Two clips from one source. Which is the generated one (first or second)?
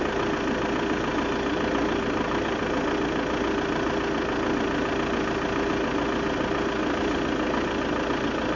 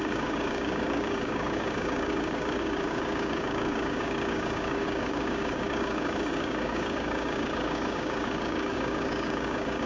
second